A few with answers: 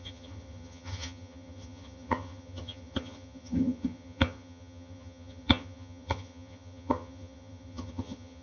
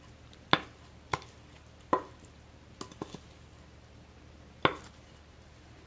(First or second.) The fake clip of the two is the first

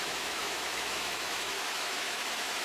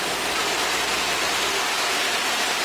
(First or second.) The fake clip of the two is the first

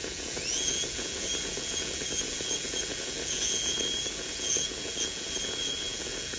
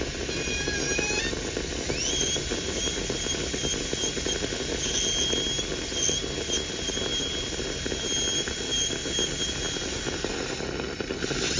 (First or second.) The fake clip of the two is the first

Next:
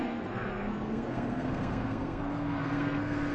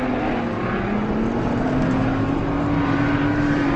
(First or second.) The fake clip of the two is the first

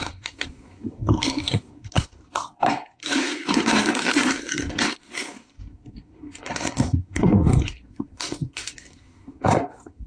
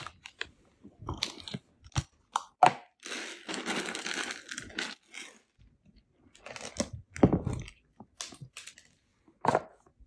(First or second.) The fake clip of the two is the first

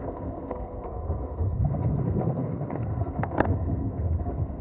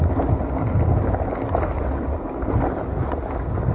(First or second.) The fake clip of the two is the first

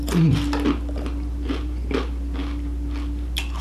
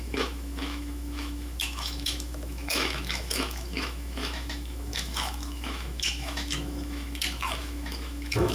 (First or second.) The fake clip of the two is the second